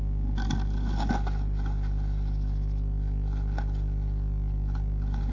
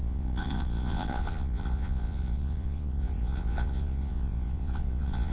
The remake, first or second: second